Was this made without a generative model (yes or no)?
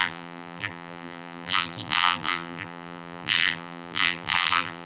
no